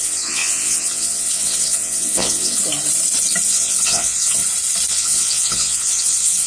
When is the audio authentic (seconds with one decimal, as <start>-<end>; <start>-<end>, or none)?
2.6-3.5; 4.4-4.9